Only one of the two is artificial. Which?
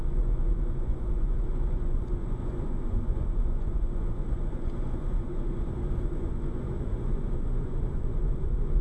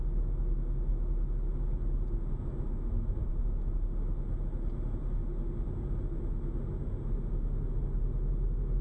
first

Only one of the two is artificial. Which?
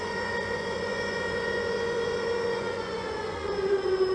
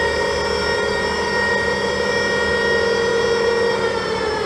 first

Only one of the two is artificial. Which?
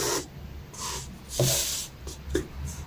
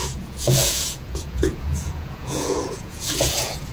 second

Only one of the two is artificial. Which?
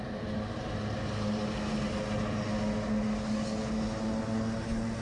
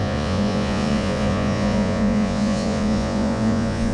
second